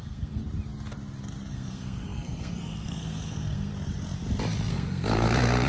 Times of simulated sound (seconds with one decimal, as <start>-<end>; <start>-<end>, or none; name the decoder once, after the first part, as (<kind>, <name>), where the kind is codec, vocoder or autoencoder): 0.0-0.4 (codec, SNAC); 1.5-3.7; 4.7-5.7